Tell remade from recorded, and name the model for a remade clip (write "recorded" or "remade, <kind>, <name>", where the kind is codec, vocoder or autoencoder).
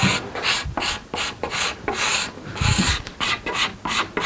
recorded